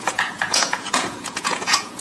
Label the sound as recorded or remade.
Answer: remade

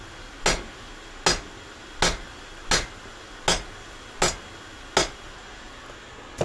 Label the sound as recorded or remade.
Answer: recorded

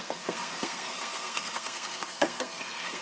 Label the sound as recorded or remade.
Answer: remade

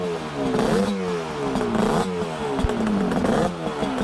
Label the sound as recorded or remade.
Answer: recorded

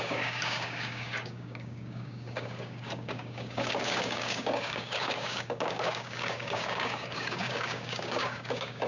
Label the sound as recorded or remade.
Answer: remade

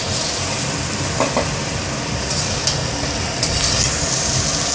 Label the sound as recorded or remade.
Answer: recorded